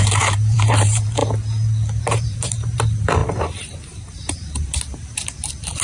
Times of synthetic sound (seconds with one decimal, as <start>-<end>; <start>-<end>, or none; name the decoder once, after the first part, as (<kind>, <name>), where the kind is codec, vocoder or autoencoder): 0.0-1.2 (vocoder, BigVGAN v2); 2.0-5.8